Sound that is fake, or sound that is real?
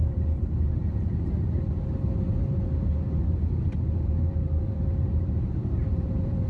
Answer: fake